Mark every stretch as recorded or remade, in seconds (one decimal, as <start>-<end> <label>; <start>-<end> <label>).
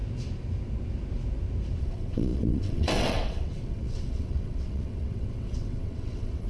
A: 0.0-1.8 recorded; 1.8-6.5 remade